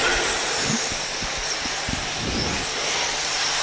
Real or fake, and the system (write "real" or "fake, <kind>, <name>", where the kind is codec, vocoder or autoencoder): real